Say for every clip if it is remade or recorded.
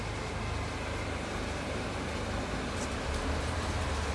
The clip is recorded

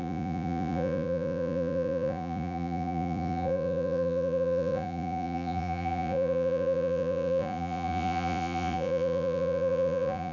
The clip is remade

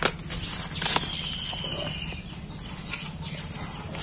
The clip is recorded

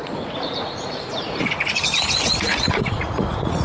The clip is remade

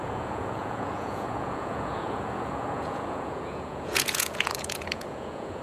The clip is remade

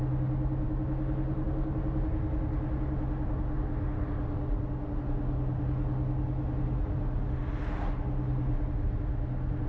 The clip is recorded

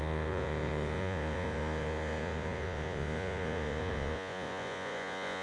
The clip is remade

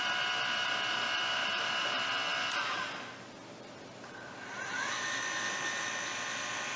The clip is recorded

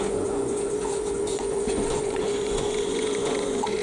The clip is remade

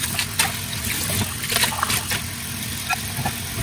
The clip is recorded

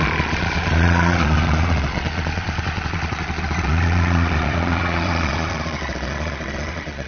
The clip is remade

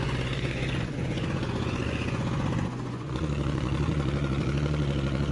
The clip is remade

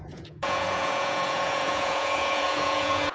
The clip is remade